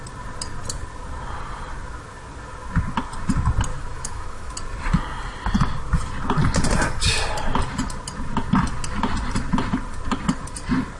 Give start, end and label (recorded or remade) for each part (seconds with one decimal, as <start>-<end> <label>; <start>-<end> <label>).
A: 0.0-3.7 recorded; 3.7-4.5 remade; 4.5-11.0 recorded